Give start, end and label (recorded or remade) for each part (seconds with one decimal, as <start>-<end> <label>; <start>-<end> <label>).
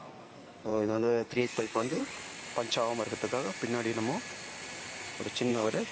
0.0-2.0 remade; 2.0-5.5 recorded; 5.5-5.9 remade